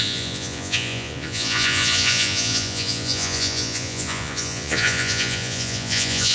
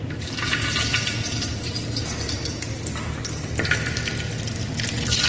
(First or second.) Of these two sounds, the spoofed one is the first